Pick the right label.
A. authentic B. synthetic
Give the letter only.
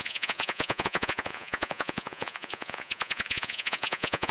B